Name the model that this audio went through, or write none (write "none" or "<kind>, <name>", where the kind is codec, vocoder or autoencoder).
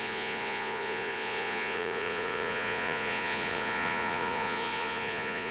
vocoder, Vocos